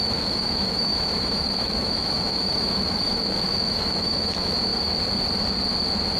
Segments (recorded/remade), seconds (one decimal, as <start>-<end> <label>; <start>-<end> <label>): 0.0-4.7 remade; 4.7-6.2 recorded